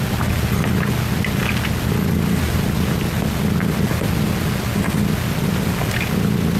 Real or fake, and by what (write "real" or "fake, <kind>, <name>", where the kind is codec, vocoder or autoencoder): real